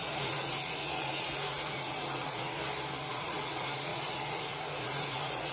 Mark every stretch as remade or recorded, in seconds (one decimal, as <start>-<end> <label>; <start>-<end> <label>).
0.0-2.6 remade; 2.6-3.1 recorded; 3.1-5.5 remade